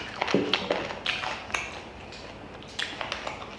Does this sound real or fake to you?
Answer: real